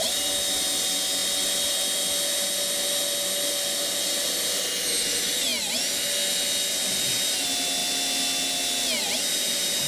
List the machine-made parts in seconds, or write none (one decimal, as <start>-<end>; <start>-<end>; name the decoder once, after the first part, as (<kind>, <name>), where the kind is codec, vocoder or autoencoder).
none